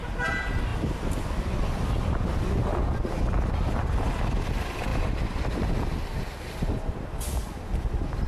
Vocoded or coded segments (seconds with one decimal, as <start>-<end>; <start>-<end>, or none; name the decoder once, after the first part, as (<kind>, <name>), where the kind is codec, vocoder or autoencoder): none